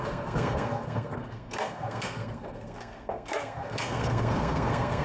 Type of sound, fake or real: fake